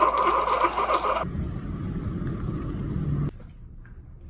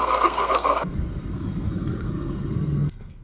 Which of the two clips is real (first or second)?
first